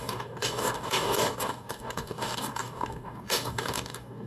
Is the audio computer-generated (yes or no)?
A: yes